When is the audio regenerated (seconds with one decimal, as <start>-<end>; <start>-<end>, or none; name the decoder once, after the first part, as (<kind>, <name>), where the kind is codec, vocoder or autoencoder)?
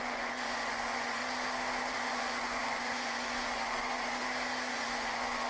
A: 0.0-1.2 (vocoder, Vocos); 1.9-4.2; 4.7-5.5